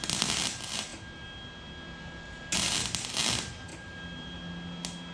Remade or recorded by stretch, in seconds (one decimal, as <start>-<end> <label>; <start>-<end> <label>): 0.0-3.7 recorded; 3.7-4.4 remade; 4.4-5.1 recorded